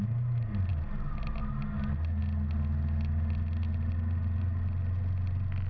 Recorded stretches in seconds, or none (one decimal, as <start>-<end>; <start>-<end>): 0.0-5.7